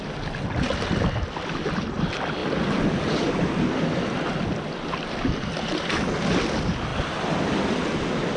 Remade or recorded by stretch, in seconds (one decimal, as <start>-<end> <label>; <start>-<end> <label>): 0.0-8.4 recorded